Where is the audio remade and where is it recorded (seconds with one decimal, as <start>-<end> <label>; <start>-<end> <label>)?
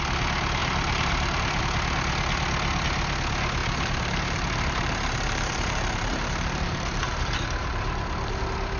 0.0-0.6 recorded; 0.6-1.6 remade; 1.6-3.6 recorded; 3.6-8.4 remade; 8.4-8.8 recorded